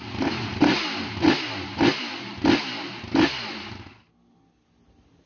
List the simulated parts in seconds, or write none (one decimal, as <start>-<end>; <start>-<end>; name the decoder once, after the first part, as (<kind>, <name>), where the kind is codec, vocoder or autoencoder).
none